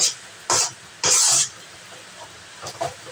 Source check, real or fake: real